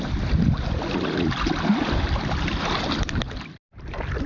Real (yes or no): yes